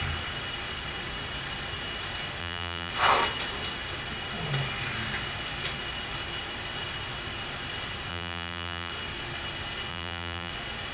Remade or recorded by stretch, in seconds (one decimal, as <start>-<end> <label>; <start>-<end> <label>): 0.0-2.4 recorded; 2.4-2.9 remade; 2.9-8.1 recorded; 8.1-8.9 remade; 8.9-9.9 recorded; 9.9-10.5 remade; 10.5-10.9 recorded